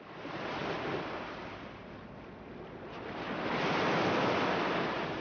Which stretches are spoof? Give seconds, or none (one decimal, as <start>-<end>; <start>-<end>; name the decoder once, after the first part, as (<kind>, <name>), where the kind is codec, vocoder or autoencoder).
0.6-1.4 (vocoder, BigVGAN v2)